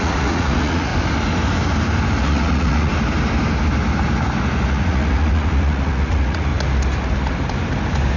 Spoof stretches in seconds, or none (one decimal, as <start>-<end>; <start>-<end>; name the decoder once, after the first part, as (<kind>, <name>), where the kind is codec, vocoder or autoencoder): 0.0-0.9 (vocoder, Vocos); 2.2-2.9; 4.7-6.5